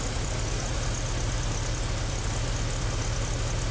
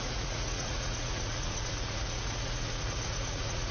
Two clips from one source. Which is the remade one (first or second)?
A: second